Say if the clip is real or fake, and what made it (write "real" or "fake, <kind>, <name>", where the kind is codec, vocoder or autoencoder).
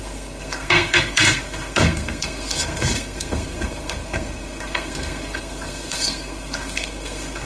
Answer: fake, codec, SNAC